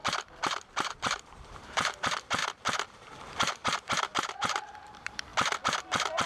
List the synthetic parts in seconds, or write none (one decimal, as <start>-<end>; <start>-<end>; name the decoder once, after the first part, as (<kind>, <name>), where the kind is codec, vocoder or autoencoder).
0.9-2.4 (vocoder, BigVGAN v2); 2.9-5.3